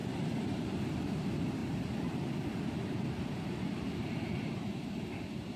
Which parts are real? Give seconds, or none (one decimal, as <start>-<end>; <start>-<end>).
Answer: 0.0-5.6